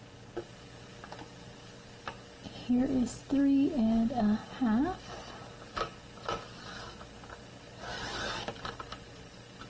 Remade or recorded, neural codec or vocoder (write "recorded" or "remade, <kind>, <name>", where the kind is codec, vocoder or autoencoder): recorded